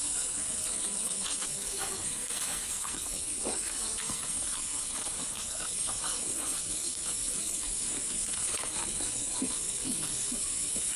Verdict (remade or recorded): remade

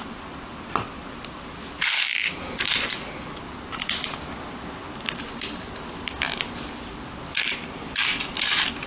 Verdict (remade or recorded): recorded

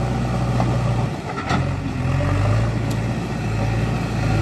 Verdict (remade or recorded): recorded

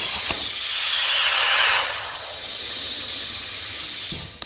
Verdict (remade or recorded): remade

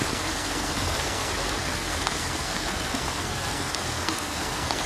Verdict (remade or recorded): remade